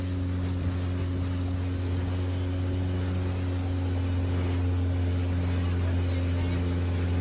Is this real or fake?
real